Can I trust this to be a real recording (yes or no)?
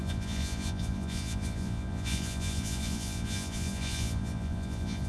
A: no